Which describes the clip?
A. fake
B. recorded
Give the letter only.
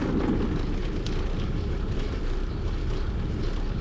B